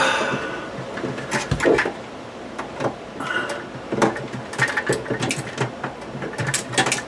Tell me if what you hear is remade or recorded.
recorded